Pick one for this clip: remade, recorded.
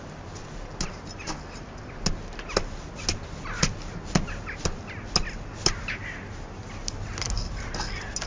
recorded